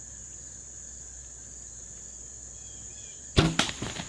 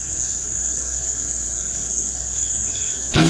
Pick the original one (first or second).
first